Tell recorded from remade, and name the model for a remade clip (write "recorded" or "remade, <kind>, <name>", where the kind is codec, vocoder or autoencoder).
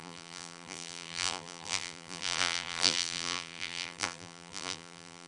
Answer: remade, vocoder, BigVGAN v2